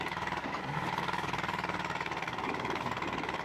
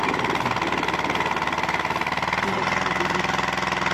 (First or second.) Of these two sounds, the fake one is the first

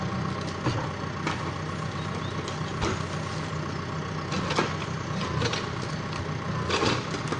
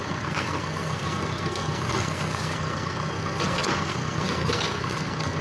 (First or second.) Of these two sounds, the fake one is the second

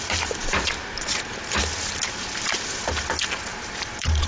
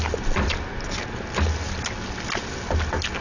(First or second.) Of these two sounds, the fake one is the first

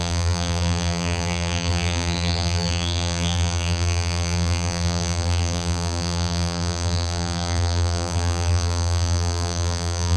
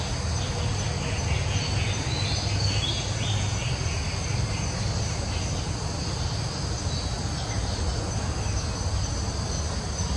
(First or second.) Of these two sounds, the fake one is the first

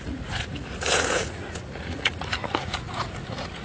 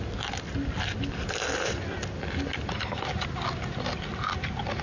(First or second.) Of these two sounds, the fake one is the first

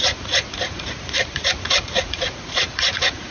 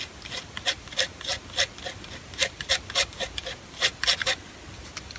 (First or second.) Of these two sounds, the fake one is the first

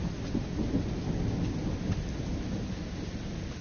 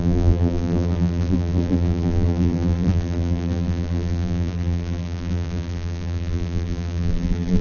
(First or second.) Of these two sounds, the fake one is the second